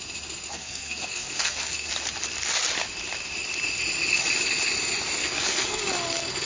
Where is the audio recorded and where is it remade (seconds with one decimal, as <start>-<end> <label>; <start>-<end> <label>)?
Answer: 0.0-0.5 recorded; 0.5-1.9 remade; 1.9-5.2 recorded; 5.2-5.8 remade; 5.8-6.5 recorded